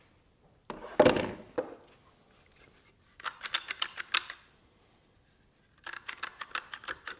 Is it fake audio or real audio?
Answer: real